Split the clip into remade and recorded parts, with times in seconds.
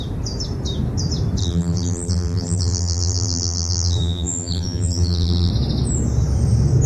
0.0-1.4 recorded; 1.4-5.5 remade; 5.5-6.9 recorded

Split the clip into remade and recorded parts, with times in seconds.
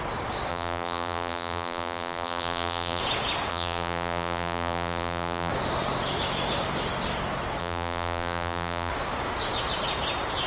0.0-0.5 recorded; 0.5-3.0 remade; 3.0-3.5 recorded; 3.5-5.5 remade; 5.5-7.6 recorded; 7.6-8.9 remade; 8.9-10.5 recorded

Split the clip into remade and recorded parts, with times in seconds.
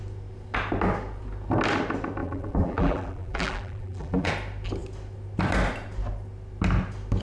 0.0-2.2 recorded; 2.2-4.3 remade; 4.3-7.2 recorded